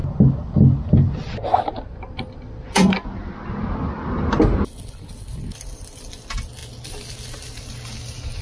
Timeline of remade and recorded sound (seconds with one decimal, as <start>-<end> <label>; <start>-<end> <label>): 0.0-8.4 recorded